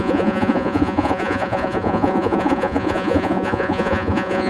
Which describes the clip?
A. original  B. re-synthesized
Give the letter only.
B